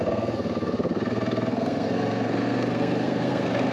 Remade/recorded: remade